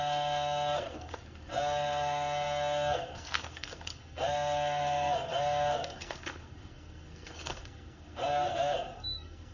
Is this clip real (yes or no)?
no